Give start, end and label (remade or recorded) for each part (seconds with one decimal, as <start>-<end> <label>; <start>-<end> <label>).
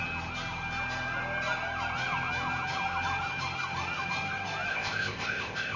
0.0-4.7 recorded; 4.7-5.8 remade